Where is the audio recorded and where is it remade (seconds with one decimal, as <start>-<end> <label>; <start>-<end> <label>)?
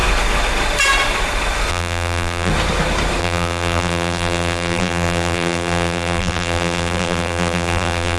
0.0-1.7 recorded; 1.7-2.5 remade; 2.5-3.2 recorded; 3.2-8.2 remade